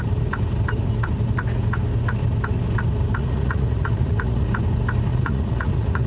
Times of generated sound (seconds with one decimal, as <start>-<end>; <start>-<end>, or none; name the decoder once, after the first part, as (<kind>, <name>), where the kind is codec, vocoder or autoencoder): 3.2-4.5 (vocoder, Vocos); 5.1-6.1